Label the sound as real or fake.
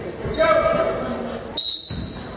real